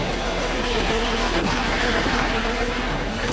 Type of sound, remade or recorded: remade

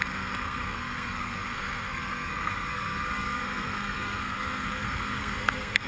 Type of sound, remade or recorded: remade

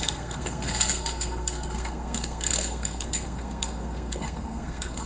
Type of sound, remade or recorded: remade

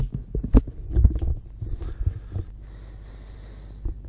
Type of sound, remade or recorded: recorded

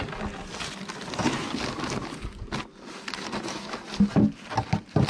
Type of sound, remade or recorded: recorded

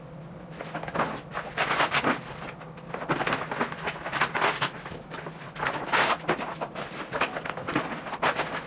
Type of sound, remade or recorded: recorded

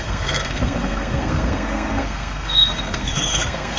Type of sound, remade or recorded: remade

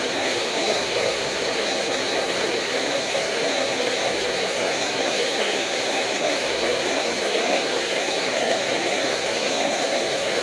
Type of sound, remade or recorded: remade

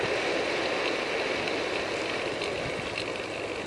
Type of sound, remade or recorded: recorded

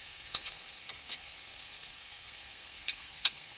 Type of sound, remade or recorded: remade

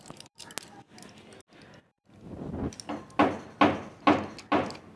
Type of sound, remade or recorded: recorded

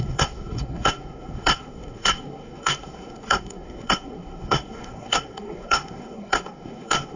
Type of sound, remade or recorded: remade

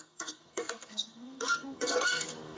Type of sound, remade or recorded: remade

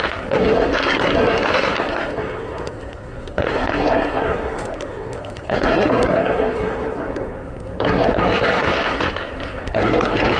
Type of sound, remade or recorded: remade